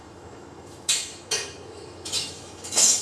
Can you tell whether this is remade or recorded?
remade